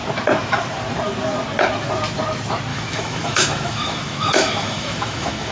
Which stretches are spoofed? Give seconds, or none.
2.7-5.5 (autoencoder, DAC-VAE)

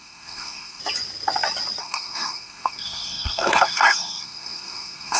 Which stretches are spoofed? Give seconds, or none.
0.0-0.8 (codec, SNAC); 1.8-5.2

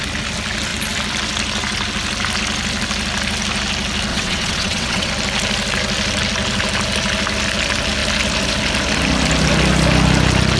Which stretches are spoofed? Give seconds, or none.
4.1-5.1 (vocoder, WaveNeXt)

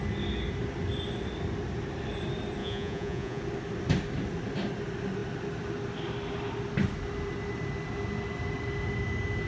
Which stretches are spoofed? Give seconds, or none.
2.6-3.4 (vocoder, Vocos)